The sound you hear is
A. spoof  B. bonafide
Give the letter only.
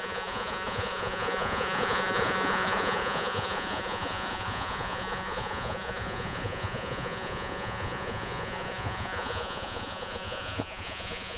A